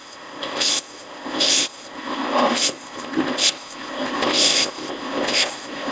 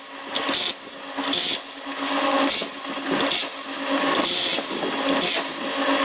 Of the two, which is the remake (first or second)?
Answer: first